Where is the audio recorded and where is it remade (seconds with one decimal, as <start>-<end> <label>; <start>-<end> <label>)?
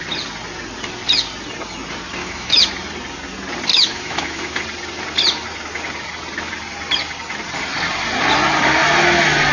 0.0-2.2 recorded; 2.2-2.7 remade; 2.7-3.7 recorded; 3.7-4.6 remade; 4.6-9.5 recorded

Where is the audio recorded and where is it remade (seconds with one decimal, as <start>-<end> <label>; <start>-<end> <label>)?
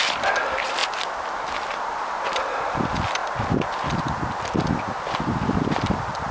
0.0-3.2 remade; 3.2-4.4 recorded; 4.4-6.3 remade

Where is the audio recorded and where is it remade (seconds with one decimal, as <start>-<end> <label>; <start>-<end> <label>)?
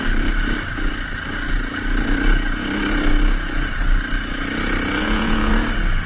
0.0-5.0 recorded; 5.0-5.5 remade; 5.5-6.1 recorded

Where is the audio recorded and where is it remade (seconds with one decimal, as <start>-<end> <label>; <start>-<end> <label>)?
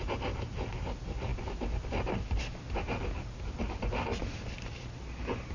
0.0-5.5 recorded